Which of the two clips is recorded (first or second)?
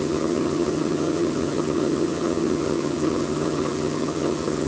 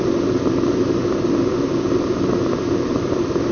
second